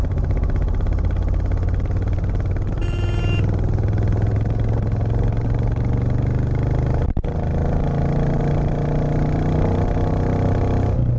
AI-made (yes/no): no